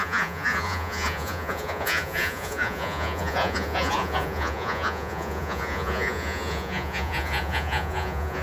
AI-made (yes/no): yes